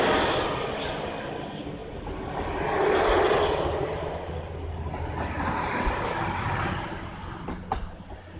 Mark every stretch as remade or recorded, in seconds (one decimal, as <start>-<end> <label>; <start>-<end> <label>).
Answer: 0.0-8.4 recorded